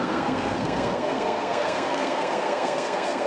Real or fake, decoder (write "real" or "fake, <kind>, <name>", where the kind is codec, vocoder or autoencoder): fake, codec, SNAC